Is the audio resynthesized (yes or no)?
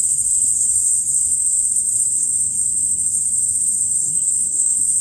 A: yes